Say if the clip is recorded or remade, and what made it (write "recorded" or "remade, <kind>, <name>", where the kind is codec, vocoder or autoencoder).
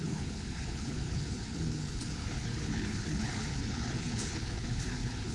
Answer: remade, codec, HILCodec